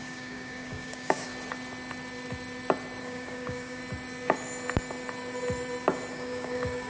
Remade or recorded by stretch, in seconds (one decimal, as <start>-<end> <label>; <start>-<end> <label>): 0.0-1.3 remade; 1.3-3.0 recorded; 3.0-3.8 remade; 3.8-6.1 recorded; 6.1-6.9 remade